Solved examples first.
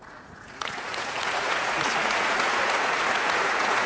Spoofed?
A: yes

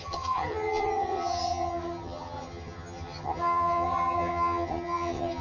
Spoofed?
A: yes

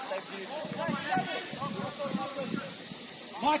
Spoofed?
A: no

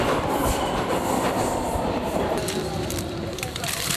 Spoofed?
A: yes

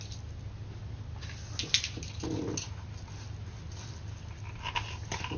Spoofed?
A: no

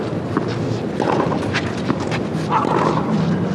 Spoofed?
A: no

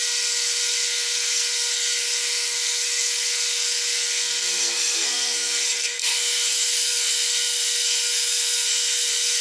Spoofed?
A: yes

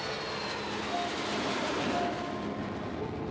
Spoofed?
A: no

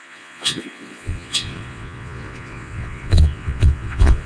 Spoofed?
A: yes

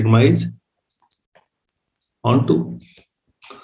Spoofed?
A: no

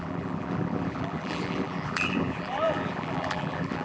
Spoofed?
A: yes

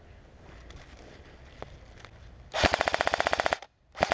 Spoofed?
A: no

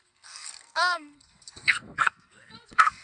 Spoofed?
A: yes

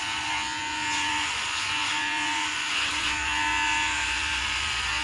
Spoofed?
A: yes